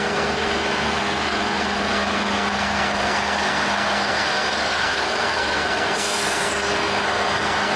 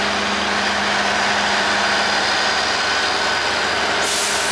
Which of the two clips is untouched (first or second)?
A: second